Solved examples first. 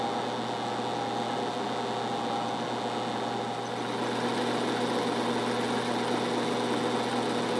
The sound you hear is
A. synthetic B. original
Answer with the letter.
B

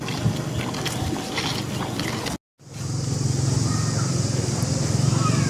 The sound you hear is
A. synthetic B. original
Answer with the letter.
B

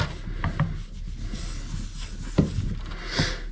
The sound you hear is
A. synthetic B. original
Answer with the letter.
B